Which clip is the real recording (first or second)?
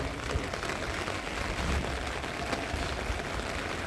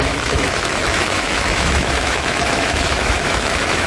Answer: first